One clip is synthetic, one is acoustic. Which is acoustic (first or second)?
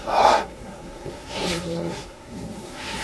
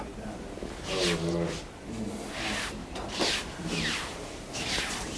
second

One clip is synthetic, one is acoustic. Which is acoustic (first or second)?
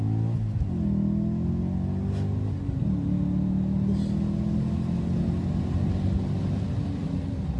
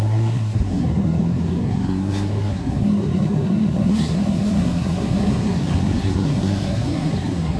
first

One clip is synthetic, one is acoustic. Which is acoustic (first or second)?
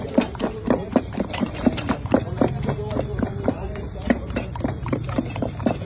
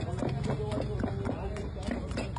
second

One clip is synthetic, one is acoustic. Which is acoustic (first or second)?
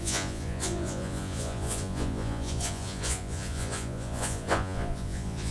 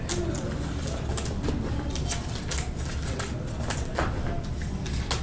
second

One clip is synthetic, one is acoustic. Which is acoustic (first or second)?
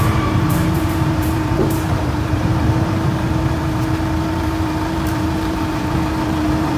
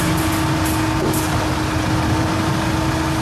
second